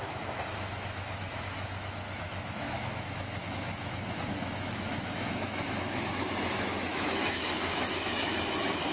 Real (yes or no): no